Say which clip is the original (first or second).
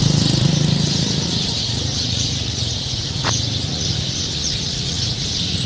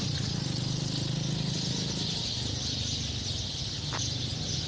second